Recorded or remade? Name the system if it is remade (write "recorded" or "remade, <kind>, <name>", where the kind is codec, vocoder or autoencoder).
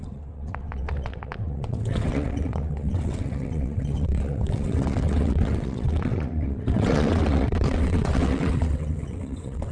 remade, vocoder, WaveNeXt